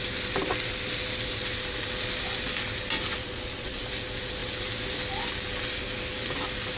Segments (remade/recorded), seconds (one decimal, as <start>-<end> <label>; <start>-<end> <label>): 0.0-3.2 recorded; 3.2-3.8 remade; 3.8-6.8 recorded